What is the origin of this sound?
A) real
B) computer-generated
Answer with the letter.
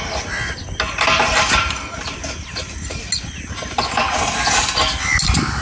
A